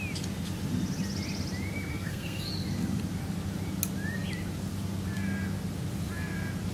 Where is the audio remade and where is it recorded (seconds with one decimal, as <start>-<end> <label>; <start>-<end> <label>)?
0.0-1.9 recorded; 1.9-2.5 remade; 2.5-6.7 recorded